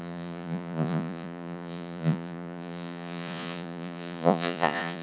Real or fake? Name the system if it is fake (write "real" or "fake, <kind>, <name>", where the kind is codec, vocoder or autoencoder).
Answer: fake, vocoder, Vocos